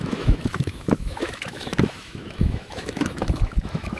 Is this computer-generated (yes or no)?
yes